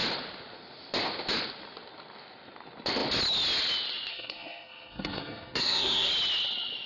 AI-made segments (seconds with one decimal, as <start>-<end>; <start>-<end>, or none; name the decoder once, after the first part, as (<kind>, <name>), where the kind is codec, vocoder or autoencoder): 4.1-6.1 (codec, SNAC)